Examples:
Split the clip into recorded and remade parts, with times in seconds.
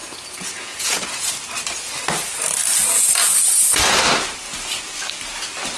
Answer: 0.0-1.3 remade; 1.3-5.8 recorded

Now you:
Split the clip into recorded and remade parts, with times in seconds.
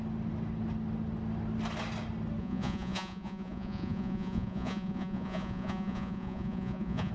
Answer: 0.0-2.4 recorded; 2.4-7.1 remade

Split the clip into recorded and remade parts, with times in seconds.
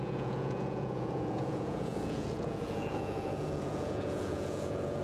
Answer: 0.0-5.0 remade